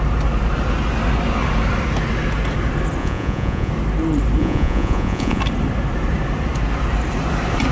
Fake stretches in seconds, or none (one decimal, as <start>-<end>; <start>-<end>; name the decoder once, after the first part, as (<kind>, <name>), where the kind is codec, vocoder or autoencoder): 3.0-3.7 (vocoder, Vocos); 4.4-5.4